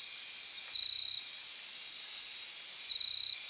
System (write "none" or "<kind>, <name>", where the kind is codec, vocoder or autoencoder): none